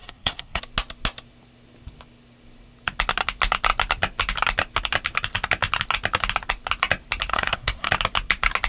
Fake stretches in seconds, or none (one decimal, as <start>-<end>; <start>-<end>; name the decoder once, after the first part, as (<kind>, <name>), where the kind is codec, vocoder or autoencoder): 0.0-0.6 (codec, SNAC); 7.3-7.9